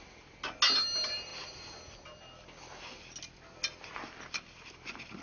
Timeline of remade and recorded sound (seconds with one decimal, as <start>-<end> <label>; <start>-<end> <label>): 0.0-5.2 recorded